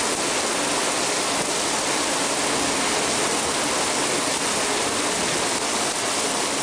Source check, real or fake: real